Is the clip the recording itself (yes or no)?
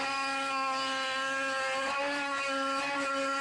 yes